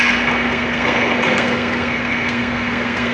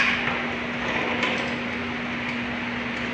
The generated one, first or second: first